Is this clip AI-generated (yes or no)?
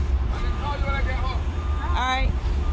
no